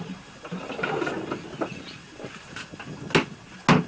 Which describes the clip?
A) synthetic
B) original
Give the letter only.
B